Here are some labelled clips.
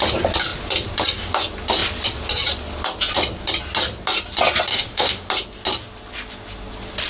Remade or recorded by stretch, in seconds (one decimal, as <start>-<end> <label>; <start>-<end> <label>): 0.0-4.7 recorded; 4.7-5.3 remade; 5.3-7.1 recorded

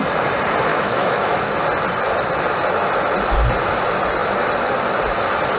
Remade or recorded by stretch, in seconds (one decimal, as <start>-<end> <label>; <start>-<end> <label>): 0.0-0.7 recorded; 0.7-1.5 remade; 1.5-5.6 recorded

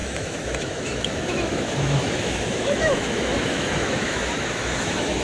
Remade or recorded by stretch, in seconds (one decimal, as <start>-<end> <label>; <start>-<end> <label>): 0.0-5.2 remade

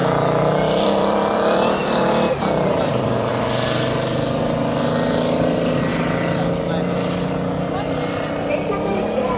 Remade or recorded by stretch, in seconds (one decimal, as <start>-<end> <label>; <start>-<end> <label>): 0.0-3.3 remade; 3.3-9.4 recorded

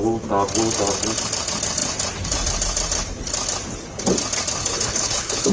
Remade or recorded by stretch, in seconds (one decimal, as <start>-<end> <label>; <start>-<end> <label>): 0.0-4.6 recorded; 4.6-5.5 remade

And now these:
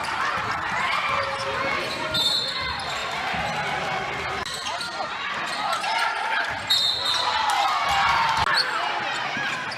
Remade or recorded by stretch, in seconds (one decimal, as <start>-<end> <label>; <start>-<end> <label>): 0.0-9.8 recorded

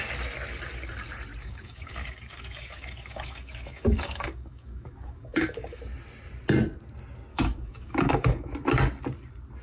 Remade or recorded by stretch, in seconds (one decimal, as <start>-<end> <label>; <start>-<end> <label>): 0.0-1.4 recorded; 1.4-5.8 remade; 5.8-7.3 recorded; 7.3-8.5 remade; 8.5-9.6 recorded